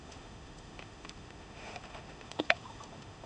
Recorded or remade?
remade